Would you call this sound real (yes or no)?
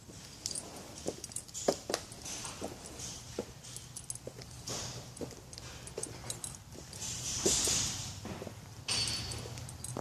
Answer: yes